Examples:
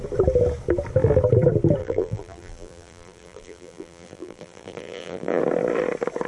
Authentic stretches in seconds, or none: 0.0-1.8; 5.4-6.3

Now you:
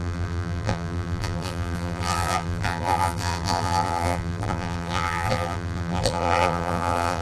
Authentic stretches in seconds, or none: none

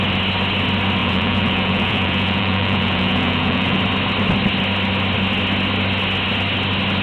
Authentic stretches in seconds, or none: 0.0-1.0; 3.8-7.0

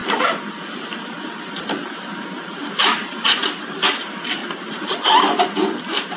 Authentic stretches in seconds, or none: 0.0-2.7; 4.4-5.8

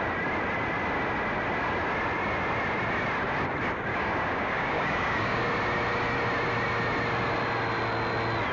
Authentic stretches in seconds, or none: 0.0-3.9; 5.4-8.5

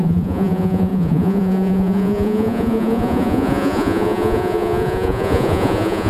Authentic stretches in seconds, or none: none

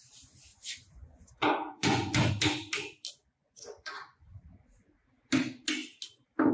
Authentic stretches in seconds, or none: 0.0-0.5; 2.3-3.4; 4.4-6.5

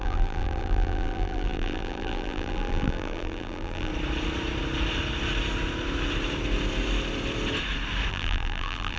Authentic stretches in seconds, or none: 3.9-8.1